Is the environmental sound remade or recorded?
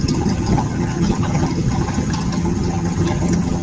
remade